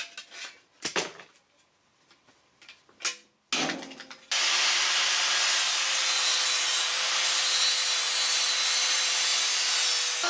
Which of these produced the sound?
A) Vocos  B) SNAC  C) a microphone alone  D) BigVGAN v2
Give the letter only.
C